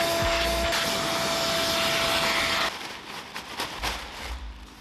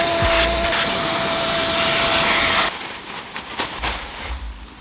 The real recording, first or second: first